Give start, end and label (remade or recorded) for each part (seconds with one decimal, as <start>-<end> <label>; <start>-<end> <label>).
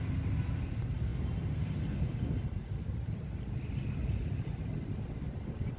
0.0-5.8 recorded